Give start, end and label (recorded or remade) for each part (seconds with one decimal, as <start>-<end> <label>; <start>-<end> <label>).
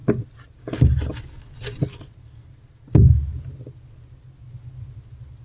0.0-5.4 recorded